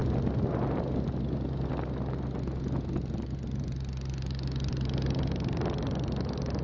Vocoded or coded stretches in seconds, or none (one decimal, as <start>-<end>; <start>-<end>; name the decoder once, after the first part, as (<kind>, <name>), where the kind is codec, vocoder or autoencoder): none